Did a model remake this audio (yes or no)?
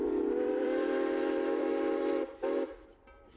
yes